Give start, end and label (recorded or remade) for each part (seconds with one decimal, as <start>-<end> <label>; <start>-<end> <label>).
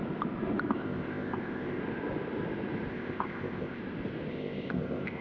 0.0-0.7 recorded; 0.7-1.8 remade; 1.8-2.9 recorded; 2.9-3.8 remade; 3.8-4.3 recorded; 4.3-5.2 remade